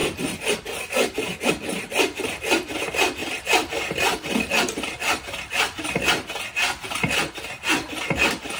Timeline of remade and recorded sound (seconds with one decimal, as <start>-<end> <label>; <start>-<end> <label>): 0.0-1.5 remade; 1.5-3.2 recorded; 3.2-5.9 remade; 5.9-8.6 recorded